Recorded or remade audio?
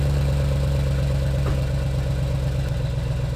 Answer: recorded